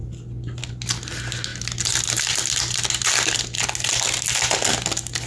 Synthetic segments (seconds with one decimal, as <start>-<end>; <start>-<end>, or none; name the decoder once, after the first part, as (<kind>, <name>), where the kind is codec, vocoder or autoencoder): none